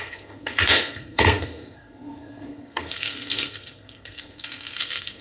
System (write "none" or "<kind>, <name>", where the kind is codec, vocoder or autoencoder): codec, SNAC